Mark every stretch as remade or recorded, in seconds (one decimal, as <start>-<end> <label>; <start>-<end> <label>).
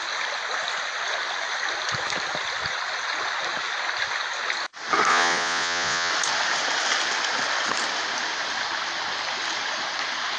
0.0-5.1 recorded; 5.1-6.1 remade; 6.1-10.4 recorded